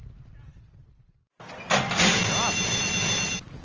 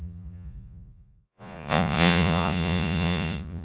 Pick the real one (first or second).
first